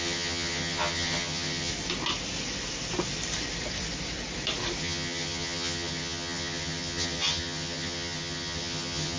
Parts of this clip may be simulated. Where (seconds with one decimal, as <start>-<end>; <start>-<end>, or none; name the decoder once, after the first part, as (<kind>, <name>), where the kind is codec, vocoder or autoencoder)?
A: 0.0-1.7 (vocoder, HiFi-GAN); 4.8-9.2